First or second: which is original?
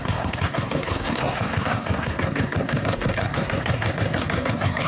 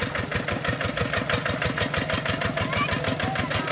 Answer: second